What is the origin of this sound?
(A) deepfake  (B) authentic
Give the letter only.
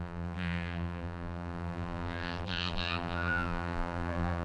A